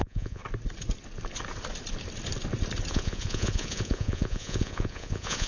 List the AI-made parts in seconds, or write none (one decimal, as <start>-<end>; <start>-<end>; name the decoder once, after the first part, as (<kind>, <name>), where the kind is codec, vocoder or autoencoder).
0.0-0.4 (vocoder, Vocos); 2.9-5.5